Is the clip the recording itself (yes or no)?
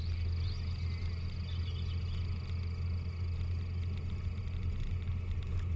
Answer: yes